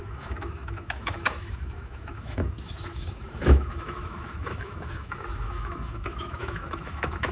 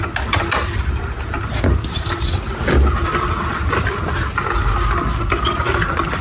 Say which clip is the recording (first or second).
second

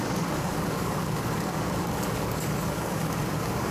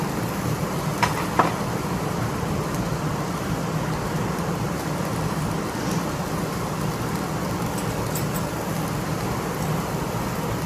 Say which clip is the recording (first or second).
second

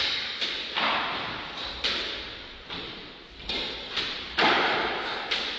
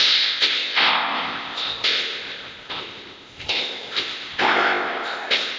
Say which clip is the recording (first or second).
first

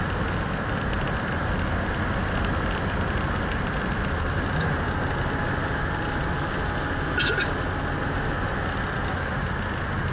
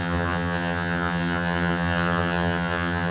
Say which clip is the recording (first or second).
first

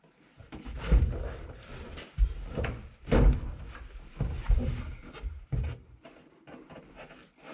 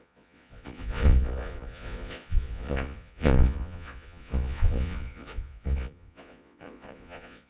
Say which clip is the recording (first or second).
first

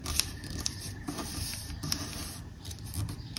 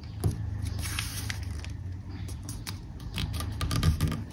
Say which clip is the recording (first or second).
second